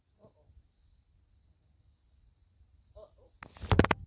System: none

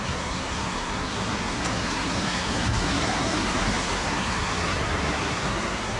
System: codec, SNAC